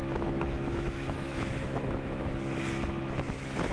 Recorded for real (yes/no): no